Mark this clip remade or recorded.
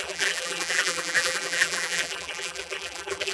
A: remade